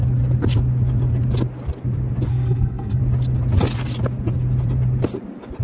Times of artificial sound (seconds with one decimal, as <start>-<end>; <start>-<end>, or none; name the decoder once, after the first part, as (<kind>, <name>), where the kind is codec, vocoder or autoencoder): 2.3-3.0 (codec, SNAC)